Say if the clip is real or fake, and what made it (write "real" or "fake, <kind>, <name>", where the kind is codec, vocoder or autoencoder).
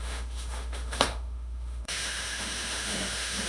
fake, autoencoder, DAC-VAE